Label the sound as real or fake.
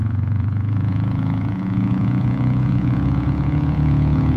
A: fake